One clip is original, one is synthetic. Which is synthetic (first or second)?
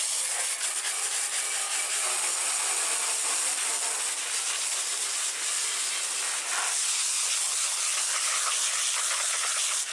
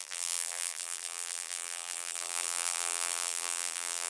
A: second